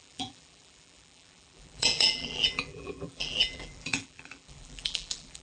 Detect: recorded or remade remade